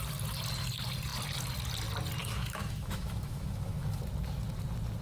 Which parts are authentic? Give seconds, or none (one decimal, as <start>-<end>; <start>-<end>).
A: 0.0-2.2; 4.0-5.0